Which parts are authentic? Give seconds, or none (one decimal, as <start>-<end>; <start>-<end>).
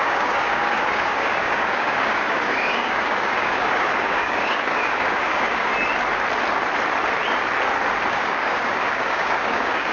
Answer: 5.7-8.1